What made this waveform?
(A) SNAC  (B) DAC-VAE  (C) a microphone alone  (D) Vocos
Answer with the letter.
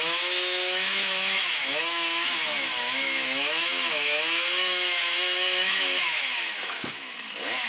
B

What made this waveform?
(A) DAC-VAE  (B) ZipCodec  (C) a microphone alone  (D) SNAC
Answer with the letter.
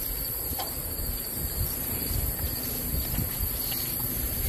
C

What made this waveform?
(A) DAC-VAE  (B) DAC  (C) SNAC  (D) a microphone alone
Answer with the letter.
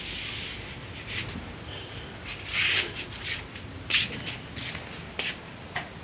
D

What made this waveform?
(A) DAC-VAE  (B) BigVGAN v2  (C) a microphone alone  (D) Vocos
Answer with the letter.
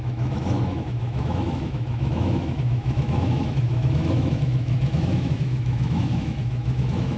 A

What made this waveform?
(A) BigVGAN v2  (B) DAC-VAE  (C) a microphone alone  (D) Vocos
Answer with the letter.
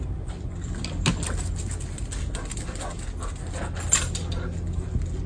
C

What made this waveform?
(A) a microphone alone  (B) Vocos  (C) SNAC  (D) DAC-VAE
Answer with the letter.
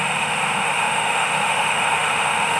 D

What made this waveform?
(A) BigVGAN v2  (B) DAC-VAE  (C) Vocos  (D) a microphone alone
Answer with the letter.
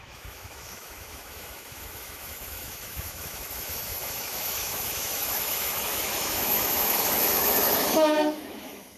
B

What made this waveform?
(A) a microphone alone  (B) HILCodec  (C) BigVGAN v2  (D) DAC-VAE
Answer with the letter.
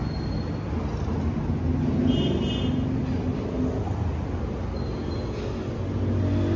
A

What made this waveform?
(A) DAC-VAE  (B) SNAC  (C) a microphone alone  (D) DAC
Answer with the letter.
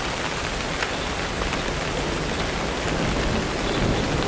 C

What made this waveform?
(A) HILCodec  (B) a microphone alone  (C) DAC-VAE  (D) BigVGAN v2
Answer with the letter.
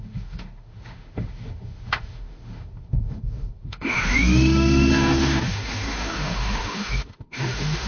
C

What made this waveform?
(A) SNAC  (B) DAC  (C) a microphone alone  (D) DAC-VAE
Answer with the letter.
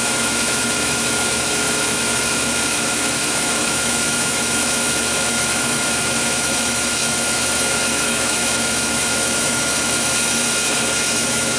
D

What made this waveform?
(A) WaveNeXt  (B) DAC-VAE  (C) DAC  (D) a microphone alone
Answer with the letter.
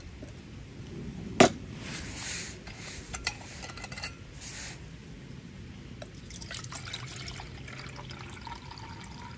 D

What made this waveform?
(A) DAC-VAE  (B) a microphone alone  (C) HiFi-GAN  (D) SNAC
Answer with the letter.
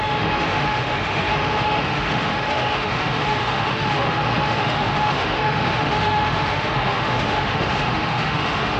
A